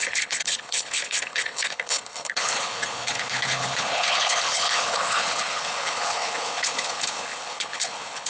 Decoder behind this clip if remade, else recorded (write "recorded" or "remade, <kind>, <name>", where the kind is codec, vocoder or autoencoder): remade, codec, HILCodec